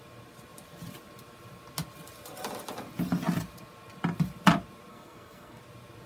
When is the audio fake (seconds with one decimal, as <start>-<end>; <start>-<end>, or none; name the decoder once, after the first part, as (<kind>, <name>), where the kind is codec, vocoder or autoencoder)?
4.9-5.6 (codec, SNAC)